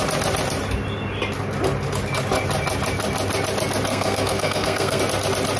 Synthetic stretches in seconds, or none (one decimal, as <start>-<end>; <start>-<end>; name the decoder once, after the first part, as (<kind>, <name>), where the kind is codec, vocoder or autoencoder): 3.9-5.0 (codec, SNAC)